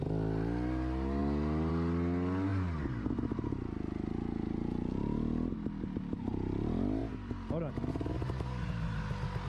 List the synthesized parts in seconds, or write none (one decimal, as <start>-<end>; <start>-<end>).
none